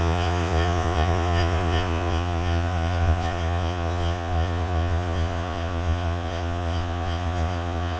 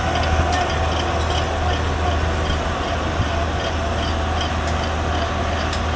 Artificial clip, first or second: first